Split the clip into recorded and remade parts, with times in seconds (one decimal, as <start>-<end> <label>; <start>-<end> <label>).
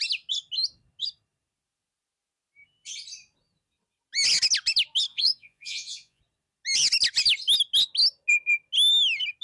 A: 0.0-5.1 recorded; 5.1-6.2 remade; 6.2-9.4 recorded